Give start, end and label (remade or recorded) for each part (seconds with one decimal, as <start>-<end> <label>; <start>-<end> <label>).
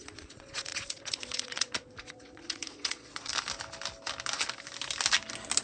0.0-3.3 remade; 3.3-5.6 recorded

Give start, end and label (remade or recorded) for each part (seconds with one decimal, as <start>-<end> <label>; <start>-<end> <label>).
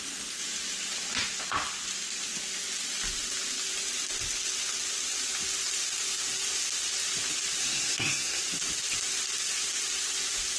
0.0-7.6 recorded; 7.6-8.4 remade; 8.4-10.6 recorded